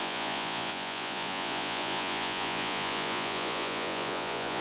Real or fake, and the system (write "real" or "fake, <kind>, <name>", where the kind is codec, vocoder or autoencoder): fake, vocoder, Vocos